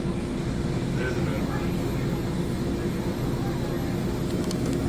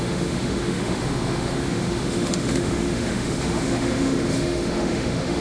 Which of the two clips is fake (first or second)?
second